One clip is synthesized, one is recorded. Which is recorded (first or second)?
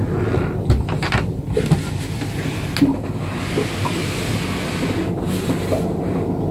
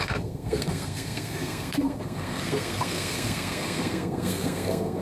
first